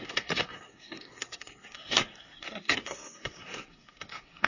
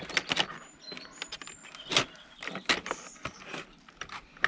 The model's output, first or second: first